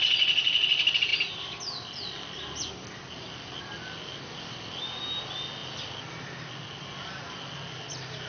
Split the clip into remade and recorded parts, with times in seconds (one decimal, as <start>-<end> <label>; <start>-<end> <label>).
0.0-8.3 recorded